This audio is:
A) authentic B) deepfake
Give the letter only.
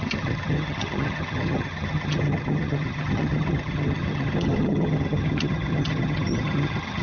B